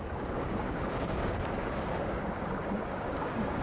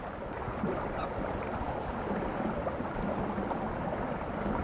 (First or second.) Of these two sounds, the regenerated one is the first